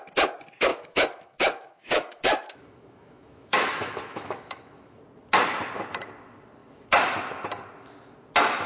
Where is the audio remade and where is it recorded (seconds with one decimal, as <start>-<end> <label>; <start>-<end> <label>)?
0.0-0.7 recorded; 0.7-5.0 remade; 5.0-8.7 recorded